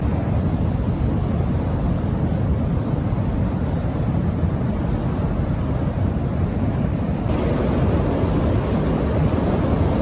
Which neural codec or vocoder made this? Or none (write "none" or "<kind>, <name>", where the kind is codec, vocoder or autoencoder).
none